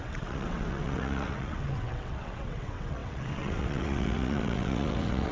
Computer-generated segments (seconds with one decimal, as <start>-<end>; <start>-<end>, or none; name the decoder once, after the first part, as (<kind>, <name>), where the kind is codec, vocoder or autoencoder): 0.0-5.3 (vocoder, WaveNeXt)